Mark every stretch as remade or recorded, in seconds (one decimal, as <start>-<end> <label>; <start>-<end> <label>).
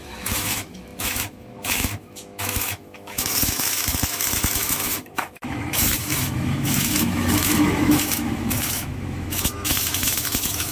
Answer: 0.0-10.7 remade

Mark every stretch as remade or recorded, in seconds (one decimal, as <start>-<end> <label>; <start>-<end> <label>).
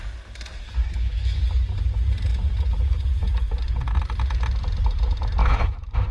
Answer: 0.0-0.8 recorded; 0.8-1.4 remade; 1.4-5.4 recorded; 5.4-6.1 remade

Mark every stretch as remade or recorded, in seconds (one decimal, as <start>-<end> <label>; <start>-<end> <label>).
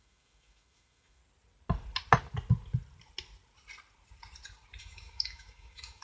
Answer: 0.0-1.2 remade; 1.2-4.8 recorded; 4.8-6.0 remade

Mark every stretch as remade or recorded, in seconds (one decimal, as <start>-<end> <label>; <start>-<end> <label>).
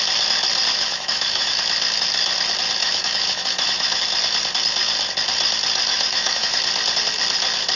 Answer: 0.0-0.7 recorded; 0.7-1.6 remade; 1.6-2.8 recorded; 2.8-4.0 remade; 4.0-5.9 recorded; 5.9-6.6 remade; 6.6-7.8 recorded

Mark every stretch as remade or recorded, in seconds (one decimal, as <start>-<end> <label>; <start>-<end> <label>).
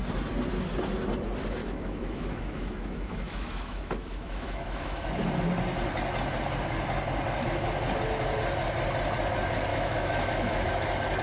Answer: 0.0-1.6 recorded; 1.6-5.1 remade; 5.1-9.7 recorded; 9.7-10.7 remade; 10.7-11.2 recorded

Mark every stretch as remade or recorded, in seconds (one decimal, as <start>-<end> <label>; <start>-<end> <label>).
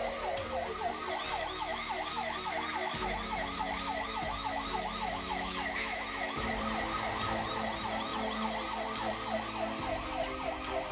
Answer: 0.0-1.3 recorded; 1.3-6.5 remade; 6.5-10.9 recorded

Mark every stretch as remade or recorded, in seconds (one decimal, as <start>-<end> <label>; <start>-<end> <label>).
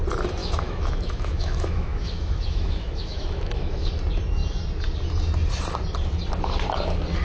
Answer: 0.0-0.4 recorded; 0.4-3.9 remade; 3.9-7.2 recorded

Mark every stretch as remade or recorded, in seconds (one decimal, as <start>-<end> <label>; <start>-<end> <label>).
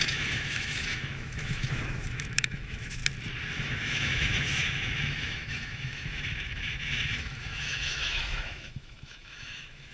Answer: 0.0-3.0 remade; 3.0-3.5 recorded; 3.5-9.9 remade